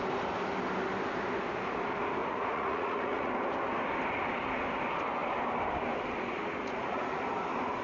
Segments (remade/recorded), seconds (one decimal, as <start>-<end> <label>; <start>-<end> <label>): 0.0-2.2 recorded; 2.2-3.3 remade; 3.3-6.6 recorded; 6.6-7.2 remade; 7.2-7.8 recorded